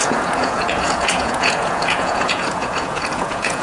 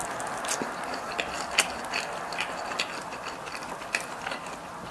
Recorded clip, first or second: second